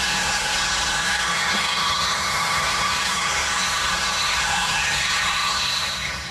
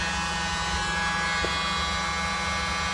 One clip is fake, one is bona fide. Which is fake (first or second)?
first